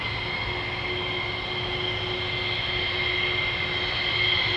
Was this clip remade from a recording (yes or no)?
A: no